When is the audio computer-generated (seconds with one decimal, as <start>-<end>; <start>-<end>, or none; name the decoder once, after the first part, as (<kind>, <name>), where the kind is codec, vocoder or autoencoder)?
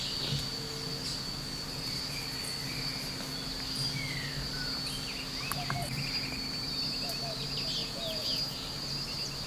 7.8-8.4 (vocoder, Vocos)